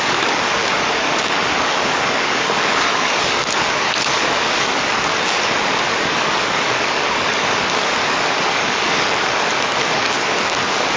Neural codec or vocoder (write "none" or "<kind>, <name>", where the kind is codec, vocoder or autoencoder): codec, DAC